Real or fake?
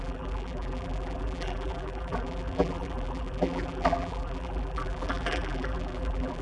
fake